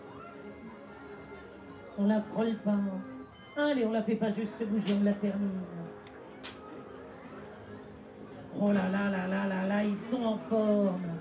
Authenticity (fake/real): real